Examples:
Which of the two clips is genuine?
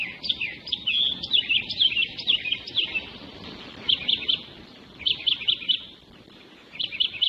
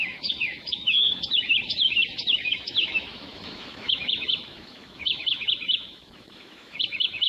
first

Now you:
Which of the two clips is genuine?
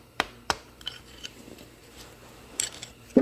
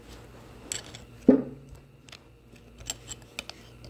second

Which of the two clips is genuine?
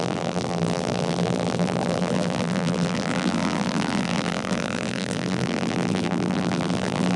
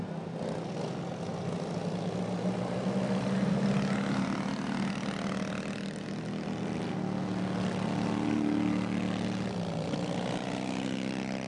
second